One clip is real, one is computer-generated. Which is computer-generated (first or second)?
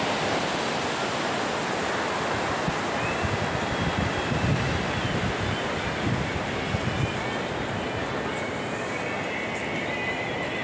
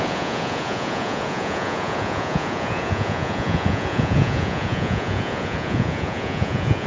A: second